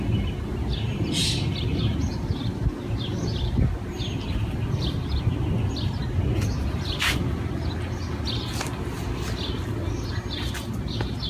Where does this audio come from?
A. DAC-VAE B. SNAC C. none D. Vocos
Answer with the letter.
C